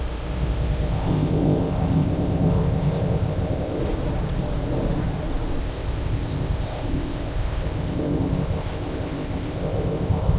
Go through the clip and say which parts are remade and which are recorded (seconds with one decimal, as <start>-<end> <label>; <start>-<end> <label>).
0.0-3.8 remade; 3.8-5.6 recorded; 5.6-10.4 remade